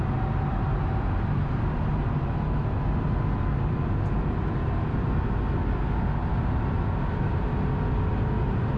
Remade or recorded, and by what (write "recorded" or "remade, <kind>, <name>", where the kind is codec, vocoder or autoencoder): recorded